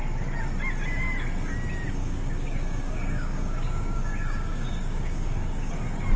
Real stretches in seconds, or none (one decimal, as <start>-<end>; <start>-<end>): 0.0-2.0; 5.7-6.2